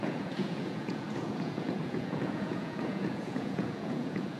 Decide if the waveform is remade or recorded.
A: remade